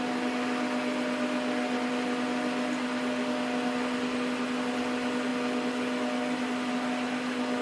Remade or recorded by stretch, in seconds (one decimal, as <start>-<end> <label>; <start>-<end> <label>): 0.0-7.6 recorded

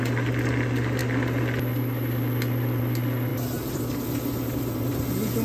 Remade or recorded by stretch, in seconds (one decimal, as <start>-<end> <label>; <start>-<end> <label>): 0.0-3.3 recorded; 3.3-4.6 remade; 4.6-5.4 recorded

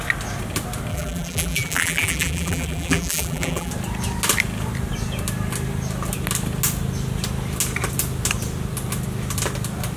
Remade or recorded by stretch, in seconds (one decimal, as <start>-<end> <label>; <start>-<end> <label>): 0.0-0.9 recorded; 0.9-3.7 remade; 3.7-10.0 recorded

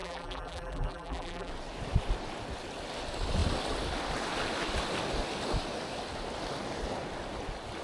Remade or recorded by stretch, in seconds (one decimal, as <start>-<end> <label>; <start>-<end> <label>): 0.0-1.5 remade; 1.5-7.8 recorded

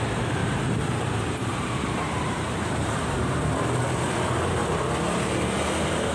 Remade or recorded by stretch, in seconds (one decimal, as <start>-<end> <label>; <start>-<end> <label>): 0.0-4.6 remade; 4.6-6.1 recorded

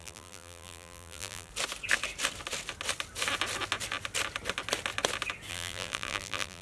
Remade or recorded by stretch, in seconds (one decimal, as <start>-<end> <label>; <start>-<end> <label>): 0.0-1.5 remade; 1.5-5.5 recorded; 5.5-6.6 remade

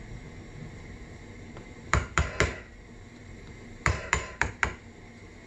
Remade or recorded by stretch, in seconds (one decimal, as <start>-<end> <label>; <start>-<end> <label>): 0.0-0.6 recorded; 0.6-2.2 remade; 2.2-3.2 recorded; 3.2-4.5 remade; 4.5-5.5 recorded